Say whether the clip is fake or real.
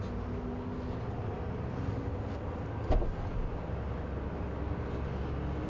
real